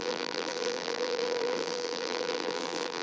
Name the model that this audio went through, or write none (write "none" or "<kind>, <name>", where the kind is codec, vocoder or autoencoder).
vocoder, BigVGAN v2